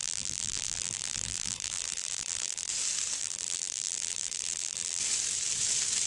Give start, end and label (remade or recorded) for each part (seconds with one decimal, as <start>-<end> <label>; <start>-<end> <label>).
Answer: 0.0-2.7 remade; 2.7-3.2 recorded; 3.2-5.0 remade; 5.0-6.1 recorded